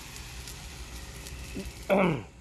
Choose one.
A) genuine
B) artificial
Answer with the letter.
A